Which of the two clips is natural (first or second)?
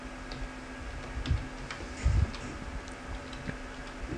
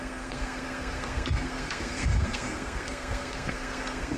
first